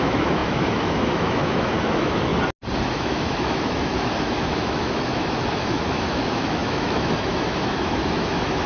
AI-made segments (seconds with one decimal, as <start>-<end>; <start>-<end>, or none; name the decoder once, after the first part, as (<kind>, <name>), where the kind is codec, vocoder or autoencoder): 0.0-2.3 (autoencoder, DAC-VAE); 2.9-8.7